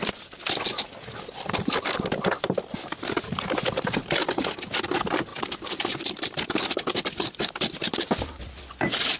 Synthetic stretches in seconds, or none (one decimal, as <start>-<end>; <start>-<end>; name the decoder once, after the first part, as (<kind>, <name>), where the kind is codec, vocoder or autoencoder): none